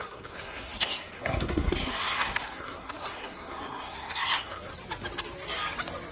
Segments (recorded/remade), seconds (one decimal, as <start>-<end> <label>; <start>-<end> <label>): 0.0-4.7 remade; 4.7-6.1 recorded